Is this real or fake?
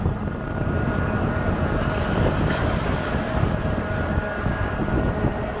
real